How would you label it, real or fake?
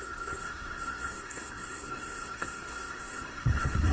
fake